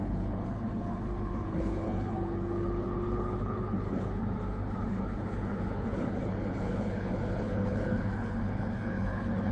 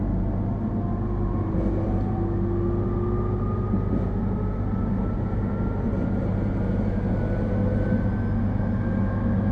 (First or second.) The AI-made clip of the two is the first